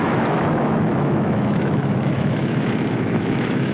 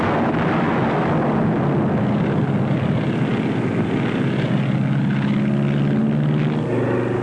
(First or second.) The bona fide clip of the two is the second